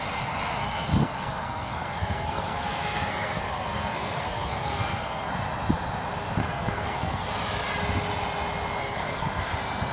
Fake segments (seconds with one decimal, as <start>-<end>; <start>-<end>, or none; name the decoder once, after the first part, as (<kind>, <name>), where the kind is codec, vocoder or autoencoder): 0.5-5.3 (codec, SNAC); 6.4-7.2; 8.8-9.5